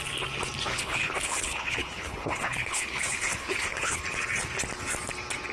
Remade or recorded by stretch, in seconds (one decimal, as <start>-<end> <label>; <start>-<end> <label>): 0.0-0.7 recorded; 0.7-4.0 remade; 4.0-5.5 recorded